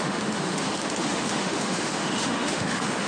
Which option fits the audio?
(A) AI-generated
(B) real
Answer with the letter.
A